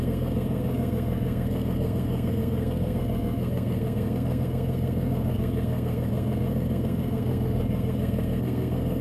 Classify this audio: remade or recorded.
remade